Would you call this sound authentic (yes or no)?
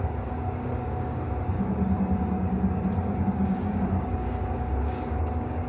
no